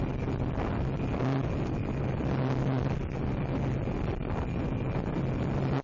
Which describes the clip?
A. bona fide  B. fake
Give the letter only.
A